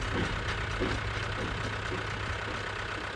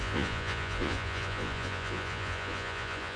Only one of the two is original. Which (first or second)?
first